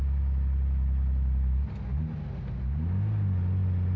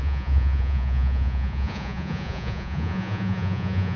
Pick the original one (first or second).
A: first